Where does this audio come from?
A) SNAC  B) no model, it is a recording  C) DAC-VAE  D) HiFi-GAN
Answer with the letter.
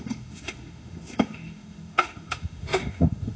C